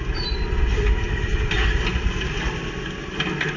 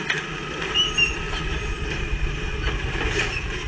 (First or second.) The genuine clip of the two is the first